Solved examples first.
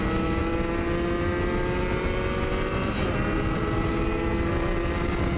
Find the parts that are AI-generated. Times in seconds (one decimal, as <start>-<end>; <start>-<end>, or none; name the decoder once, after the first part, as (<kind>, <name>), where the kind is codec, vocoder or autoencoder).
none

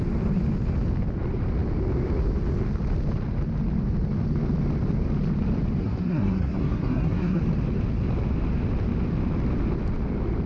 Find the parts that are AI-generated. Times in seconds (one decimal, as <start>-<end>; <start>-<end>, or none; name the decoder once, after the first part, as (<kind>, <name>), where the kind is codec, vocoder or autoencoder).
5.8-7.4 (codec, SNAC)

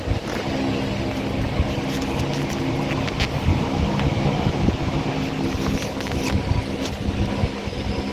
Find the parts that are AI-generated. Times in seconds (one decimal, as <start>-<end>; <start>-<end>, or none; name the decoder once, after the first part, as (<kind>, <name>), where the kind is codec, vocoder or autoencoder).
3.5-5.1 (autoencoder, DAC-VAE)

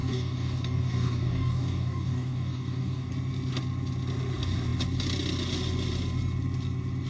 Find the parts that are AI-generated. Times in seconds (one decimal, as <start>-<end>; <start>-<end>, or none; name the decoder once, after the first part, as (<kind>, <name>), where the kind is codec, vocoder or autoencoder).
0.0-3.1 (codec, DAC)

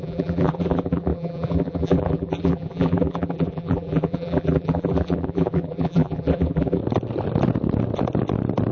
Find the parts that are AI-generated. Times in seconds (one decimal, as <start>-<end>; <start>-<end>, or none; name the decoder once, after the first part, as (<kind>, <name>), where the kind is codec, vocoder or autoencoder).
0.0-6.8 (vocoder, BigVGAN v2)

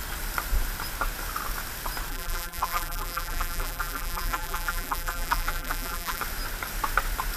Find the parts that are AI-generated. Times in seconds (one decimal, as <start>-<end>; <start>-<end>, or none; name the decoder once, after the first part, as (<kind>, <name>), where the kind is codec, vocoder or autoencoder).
2.1-6.2 (vocoder, BigVGAN v2)

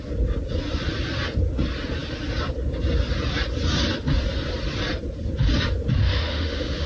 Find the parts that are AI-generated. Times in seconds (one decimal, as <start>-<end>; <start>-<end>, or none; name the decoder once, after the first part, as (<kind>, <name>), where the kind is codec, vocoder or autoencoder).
6.0-6.9 (autoencoder, DAC-VAE)